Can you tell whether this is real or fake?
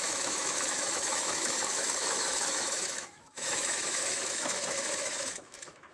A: fake